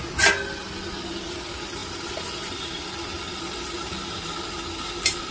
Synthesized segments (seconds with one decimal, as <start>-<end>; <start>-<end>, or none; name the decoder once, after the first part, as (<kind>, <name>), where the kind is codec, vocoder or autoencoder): none